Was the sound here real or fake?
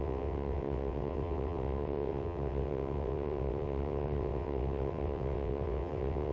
fake